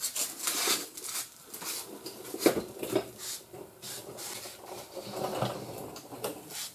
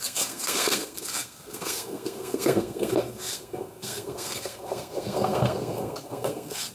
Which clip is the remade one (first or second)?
second